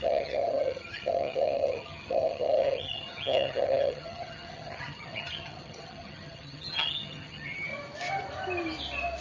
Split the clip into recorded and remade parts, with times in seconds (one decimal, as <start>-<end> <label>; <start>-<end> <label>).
0.0-7.7 remade; 7.7-9.2 recorded